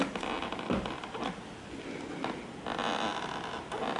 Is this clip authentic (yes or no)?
yes